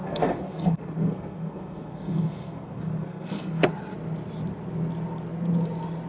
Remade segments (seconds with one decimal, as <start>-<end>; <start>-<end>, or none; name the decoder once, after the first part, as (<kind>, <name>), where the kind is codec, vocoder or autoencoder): 0.0-3.7 (codec, SNAC)